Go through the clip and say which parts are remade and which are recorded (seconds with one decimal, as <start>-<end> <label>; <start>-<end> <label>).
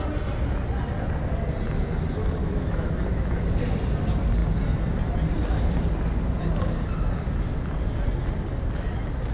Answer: 0.0-2.4 recorded; 2.4-2.9 remade; 2.9-9.3 recorded